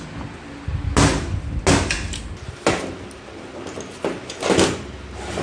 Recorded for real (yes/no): yes